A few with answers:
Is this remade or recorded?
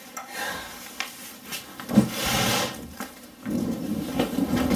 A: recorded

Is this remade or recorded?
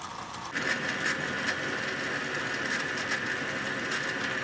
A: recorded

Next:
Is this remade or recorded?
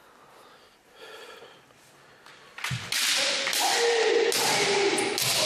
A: recorded